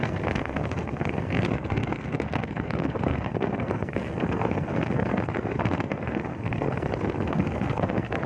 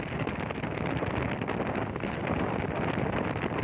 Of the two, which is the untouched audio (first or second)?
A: second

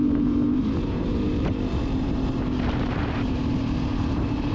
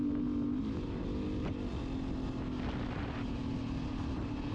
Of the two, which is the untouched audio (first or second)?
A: second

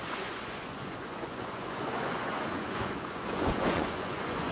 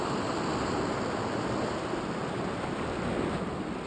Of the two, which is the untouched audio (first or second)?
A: second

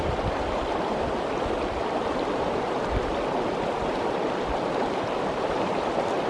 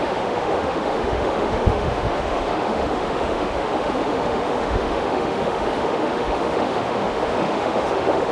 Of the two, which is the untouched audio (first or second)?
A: first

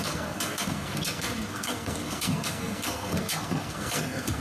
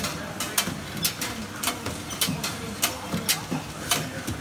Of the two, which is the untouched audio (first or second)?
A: second